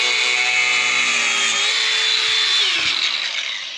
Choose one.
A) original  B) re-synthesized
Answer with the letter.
A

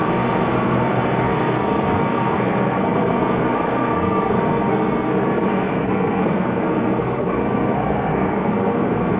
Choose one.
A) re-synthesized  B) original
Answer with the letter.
A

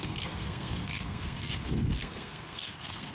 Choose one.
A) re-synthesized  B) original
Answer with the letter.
A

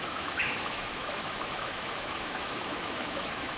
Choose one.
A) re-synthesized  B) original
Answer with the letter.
A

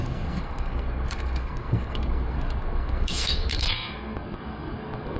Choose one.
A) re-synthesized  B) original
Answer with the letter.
A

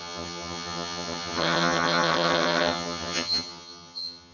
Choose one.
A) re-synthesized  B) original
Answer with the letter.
A